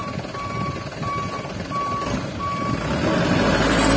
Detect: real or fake real